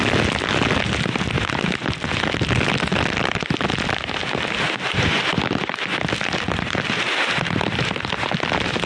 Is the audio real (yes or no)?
yes